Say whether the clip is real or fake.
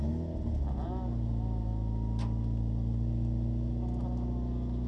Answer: real